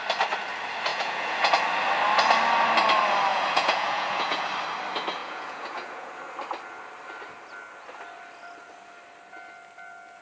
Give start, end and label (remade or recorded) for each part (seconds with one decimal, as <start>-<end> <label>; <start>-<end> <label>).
0.0-0.9 recorded; 0.9-1.5 remade; 1.5-3.3 recorded; 3.3-4.5 remade; 4.5-5.2 recorded; 5.2-6.1 remade; 6.1-10.2 recorded